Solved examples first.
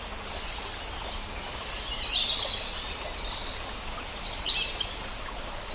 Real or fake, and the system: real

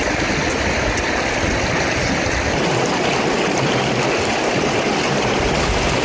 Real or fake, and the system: real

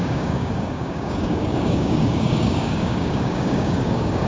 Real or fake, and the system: fake, codec, DAC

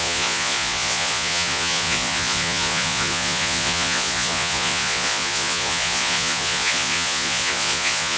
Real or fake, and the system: fake, vocoder, Vocos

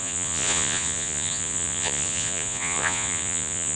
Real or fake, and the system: fake, vocoder, Vocos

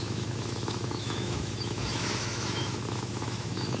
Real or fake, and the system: fake, autoencoder, DAC-VAE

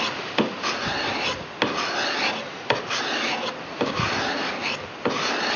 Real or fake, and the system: real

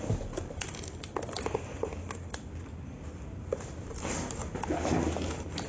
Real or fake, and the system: real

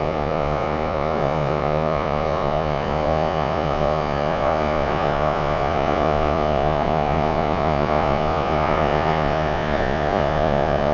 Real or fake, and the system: fake, vocoder, Vocos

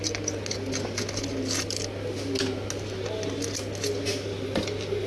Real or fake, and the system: real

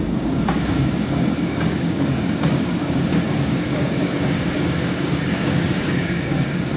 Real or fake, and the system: fake, codec, DAC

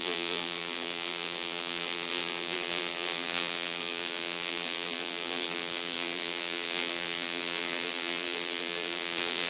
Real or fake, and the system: fake, vocoder, BigVGAN v2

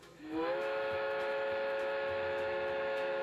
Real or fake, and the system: fake, autoencoder, DAC-VAE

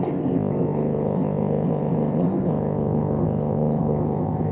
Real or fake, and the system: fake, codec, ZipCodec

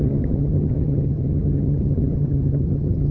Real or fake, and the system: fake, vocoder, HiFi-GAN